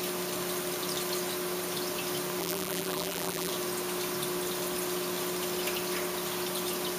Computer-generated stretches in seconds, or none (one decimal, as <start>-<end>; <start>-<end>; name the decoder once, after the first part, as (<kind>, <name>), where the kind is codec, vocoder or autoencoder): 2.4-3.5 (vocoder, BigVGAN v2)